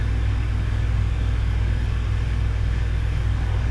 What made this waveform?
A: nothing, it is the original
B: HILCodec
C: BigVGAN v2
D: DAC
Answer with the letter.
D